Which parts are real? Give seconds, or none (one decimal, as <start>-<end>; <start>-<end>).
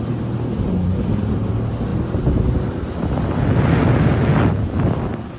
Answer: 0.0-5.4